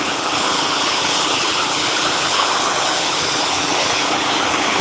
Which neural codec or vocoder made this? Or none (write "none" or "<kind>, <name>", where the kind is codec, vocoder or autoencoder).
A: codec, HILCodec